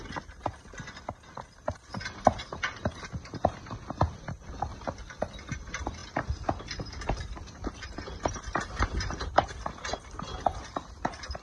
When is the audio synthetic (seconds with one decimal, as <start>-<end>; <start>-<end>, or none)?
6.0-10.0